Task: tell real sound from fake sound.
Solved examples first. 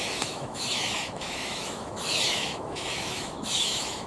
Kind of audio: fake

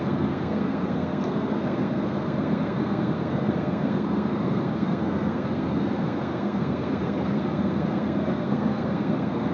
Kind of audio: fake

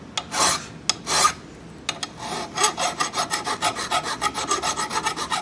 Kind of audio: real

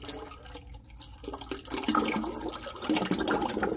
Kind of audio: real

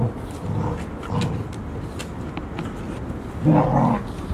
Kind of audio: real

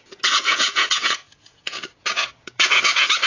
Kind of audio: fake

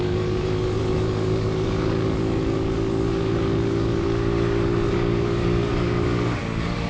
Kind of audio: fake